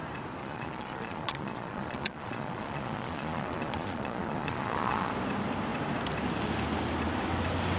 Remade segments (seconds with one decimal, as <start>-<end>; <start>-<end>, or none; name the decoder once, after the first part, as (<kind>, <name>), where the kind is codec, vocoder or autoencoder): 0.4-5.1 (vocoder, Vocos)